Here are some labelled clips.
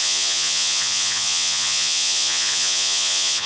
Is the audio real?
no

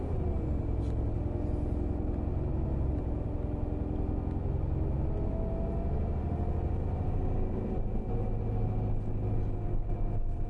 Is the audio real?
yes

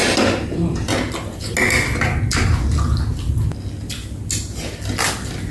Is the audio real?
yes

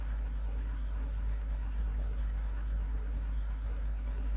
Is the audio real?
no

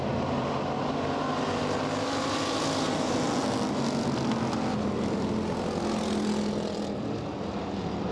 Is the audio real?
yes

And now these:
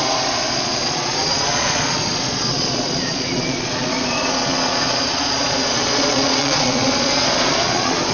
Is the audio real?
no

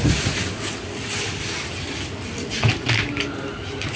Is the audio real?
yes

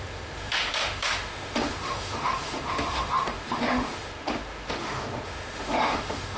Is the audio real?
no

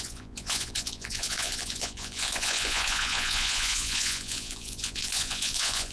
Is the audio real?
no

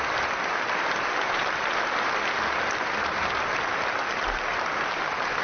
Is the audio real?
yes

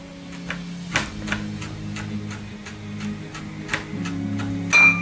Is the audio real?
yes